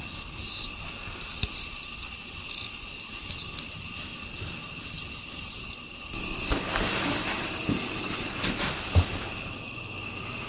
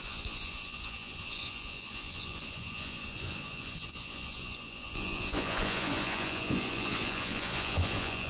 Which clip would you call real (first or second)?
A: first